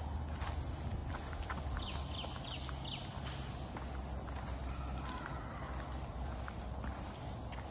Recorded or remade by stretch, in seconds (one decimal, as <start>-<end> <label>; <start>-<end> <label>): 0.0-7.7 recorded